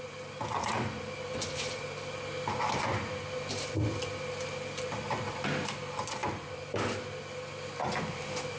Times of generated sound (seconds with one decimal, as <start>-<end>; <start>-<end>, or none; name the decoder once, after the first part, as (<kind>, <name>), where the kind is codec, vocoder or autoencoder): none

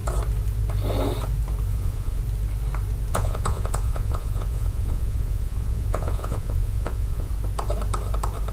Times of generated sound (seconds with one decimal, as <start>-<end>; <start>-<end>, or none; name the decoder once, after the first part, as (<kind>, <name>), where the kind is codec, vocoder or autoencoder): 1.7-2.2 (vocoder, Vocos); 3.1-7.3

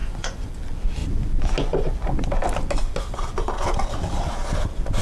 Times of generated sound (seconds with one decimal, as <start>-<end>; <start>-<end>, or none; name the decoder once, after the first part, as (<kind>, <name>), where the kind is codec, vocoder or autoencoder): 0.0-0.5 (vocoder, Vocos)

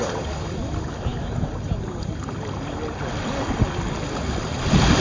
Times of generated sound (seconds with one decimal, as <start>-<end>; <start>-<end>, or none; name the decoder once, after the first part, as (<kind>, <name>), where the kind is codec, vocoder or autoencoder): none

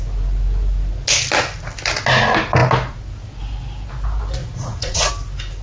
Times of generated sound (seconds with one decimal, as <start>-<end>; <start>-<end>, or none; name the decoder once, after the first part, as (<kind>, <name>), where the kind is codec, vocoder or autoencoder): 4.4-5.1 (vocoder, Vocos)

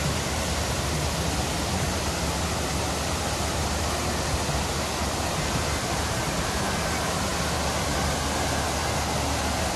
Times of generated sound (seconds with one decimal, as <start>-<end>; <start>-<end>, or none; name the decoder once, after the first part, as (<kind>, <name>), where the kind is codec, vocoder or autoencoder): none